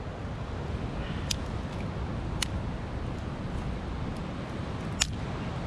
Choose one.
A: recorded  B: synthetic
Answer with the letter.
A